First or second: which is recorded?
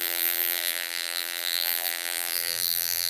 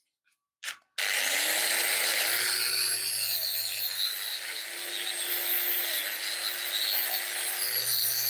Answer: second